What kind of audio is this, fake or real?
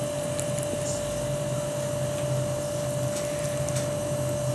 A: real